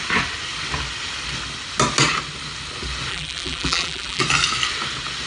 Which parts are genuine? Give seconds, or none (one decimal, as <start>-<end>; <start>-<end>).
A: 0.0-3.1; 4.2-5.3